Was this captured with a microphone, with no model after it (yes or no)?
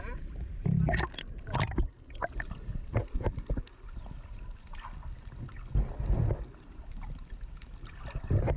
yes